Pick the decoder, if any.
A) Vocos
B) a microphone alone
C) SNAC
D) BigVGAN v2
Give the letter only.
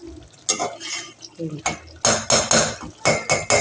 B